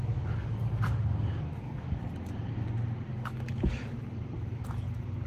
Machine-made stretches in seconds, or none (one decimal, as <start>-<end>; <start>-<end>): 0.4-1.9; 3.1-3.9